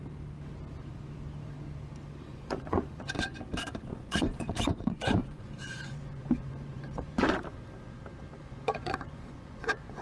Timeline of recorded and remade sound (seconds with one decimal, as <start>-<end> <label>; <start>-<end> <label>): 0.0-2.3 recorded; 2.3-3.4 remade; 3.4-3.9 recorded; 3.9-7.4 remade; 7.4-8.4 recorded; 8.4-10.0 remade